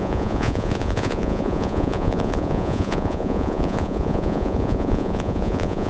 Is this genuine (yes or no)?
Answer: no